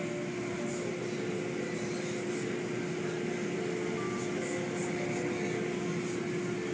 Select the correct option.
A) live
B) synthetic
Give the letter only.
A